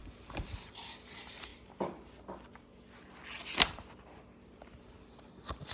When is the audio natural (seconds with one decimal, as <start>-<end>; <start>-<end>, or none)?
1.5-4.8